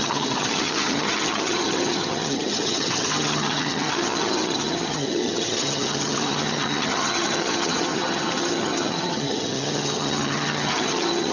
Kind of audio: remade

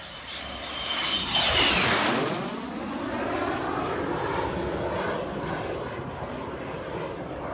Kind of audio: recorded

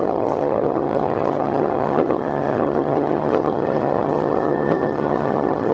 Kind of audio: remade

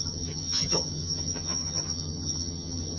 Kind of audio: remade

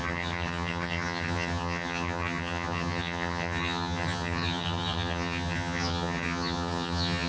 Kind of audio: remade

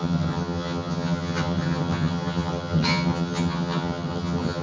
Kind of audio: remade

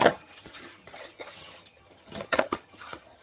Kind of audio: remade